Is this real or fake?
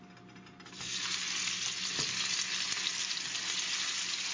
real